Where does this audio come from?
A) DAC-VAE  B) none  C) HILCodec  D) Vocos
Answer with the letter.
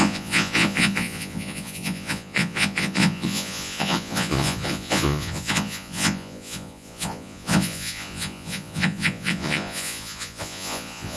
D